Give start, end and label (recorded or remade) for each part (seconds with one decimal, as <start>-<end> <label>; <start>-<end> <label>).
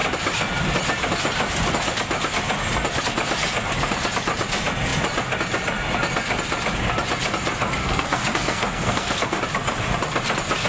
0.0-7.8 recorded; 7.8-9.4 remade; 9.4-10.7 recorded